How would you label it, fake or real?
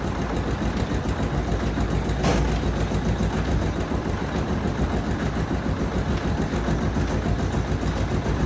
real